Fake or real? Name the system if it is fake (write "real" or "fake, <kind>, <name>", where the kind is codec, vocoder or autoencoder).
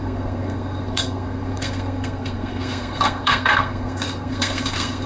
fake, codec, SNAC